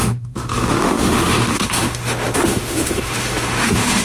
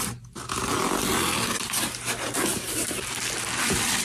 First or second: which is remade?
first